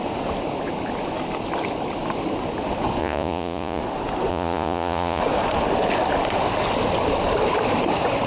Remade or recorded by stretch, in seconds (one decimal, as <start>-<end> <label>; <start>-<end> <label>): 0.0-3.0 recorded; 3.0-3.8 remade; 3.8-4.3 recorded; 4.3-5.2 remade; 5.2-8.3 recorded